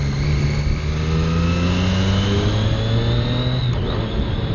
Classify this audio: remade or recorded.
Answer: recorded